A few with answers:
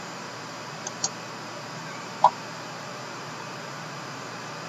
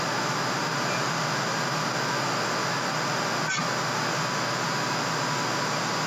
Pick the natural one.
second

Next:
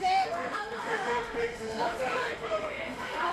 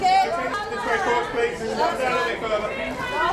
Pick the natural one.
second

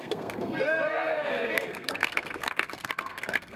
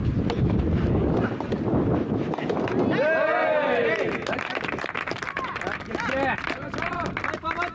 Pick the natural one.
second